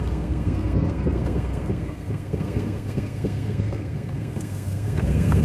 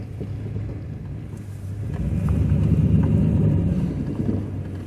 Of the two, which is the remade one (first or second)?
first